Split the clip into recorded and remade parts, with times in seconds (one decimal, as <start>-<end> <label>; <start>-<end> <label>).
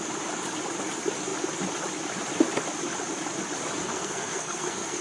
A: 0.0-3.8 recorded; 3.8-5.0 remade